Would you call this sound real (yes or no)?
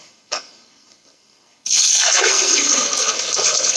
no